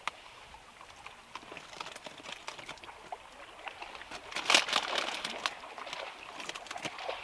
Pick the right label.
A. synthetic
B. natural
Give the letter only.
B